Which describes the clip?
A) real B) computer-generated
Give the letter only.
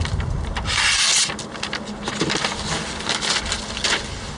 A